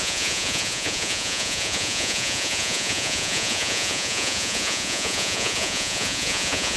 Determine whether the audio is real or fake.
fake